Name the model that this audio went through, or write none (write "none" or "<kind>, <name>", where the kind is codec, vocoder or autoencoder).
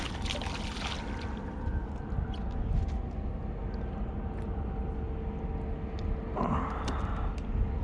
none